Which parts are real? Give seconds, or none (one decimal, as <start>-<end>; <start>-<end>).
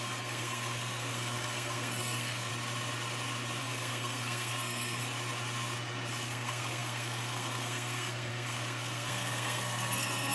2.5-3.6; 5.0-6.1